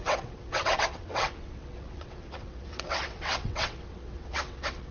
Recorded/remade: remade